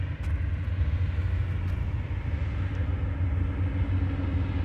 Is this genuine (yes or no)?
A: yes